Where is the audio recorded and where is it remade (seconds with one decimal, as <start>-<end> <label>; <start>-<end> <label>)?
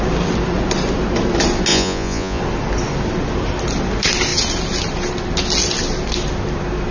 0.0-1.7 recorded; 1.7-2.4 remade; 2.4-6.9 recorded